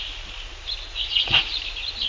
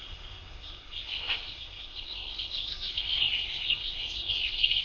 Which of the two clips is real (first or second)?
first